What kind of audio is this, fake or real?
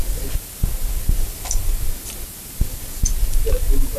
real